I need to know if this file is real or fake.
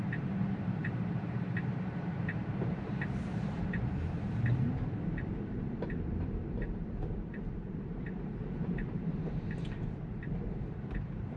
fake